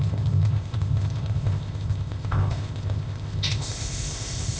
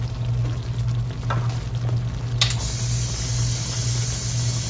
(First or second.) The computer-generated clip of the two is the first